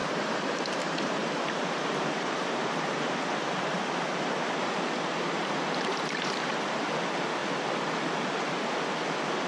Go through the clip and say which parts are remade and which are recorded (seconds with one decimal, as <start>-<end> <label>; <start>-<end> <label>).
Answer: 0.0-3.3 remade; 3.3-4.6 recorded; 4.6-6.8 remade; 6.8-9.5 recorded